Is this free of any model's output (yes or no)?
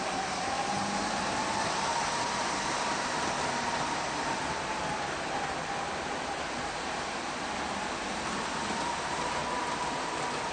yes